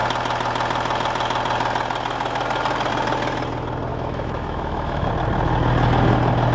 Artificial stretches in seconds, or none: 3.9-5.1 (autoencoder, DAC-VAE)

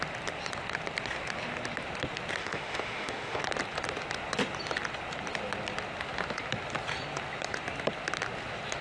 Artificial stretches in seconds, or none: 2.4-3.4 (autoencoder, DAC-VAE)

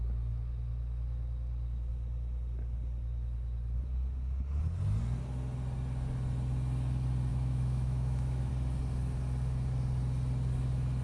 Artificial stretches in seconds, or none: 7.3-8.5 (autoencoder, DAC-VAE)

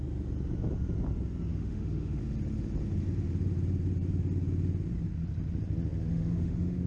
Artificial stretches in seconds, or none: 1.5-2.2 (autoencoder, DAC-VAE); 6.1-6.9

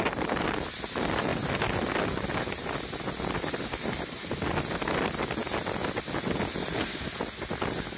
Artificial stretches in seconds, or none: none

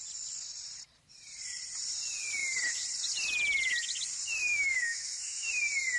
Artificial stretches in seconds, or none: 4.5-5.5 (autoencoder, DAC-VAE)